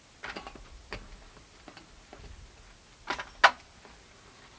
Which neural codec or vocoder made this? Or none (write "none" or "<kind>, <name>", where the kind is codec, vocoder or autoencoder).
none